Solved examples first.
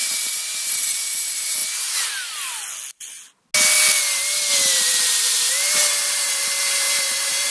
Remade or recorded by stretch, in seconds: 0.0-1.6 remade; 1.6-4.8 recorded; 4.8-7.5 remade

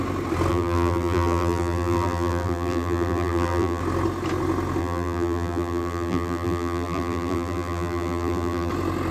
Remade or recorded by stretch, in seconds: 0.0-0.5 recorded; 0.5-3.8 remade; 3.8-4.8 recorded; 4.8-8.7 remade; 8.7-9.1 recorded

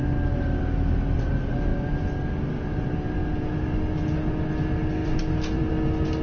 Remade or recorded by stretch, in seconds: 0.0-5.0 recorded; 5.0-5.7 remade; 5.7-6.2 recorded

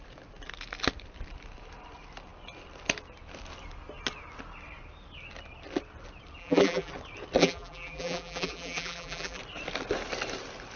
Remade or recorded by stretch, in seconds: 0.0-6.4 recorded; 6.4-6.9 remade; 6.9-7.4 recorded; 7.4-9.4 remade; 9.4-10.8 recorded